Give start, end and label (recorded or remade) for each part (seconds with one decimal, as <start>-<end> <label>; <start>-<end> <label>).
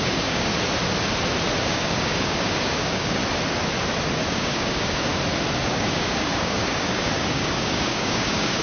0.0-0.5 remade; 0.5-1.6 recorded; 1.6-3.2 remade; 3.2-4.3 recorded; 4.3-5.1 remade; 5.1-5.6 recorded; 5.6-8.6 remade